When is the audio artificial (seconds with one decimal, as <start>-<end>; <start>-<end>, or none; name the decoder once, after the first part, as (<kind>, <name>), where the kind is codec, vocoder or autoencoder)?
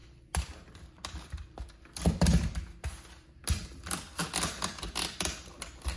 none